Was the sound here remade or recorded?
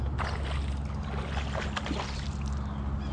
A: recorded